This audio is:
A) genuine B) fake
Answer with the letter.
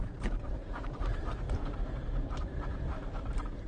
B